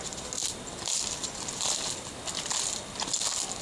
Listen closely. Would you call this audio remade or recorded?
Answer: recorded